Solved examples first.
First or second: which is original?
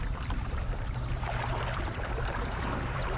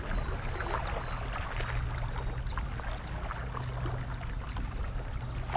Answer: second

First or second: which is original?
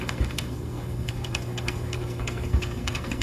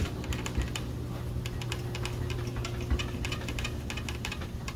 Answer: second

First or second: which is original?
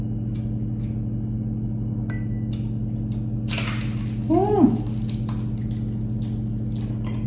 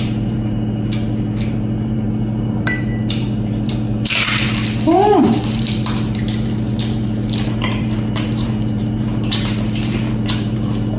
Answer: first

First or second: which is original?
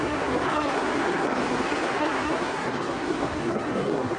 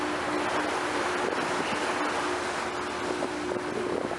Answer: second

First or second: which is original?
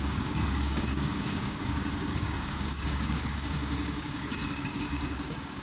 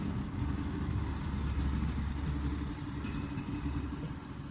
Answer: second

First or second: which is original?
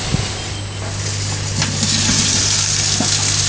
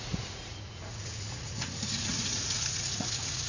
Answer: first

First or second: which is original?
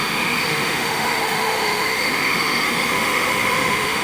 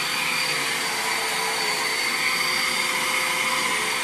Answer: second